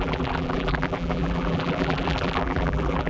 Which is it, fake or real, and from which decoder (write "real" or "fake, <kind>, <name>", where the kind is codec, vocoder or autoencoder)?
fake, vocoder, BigVGAN v2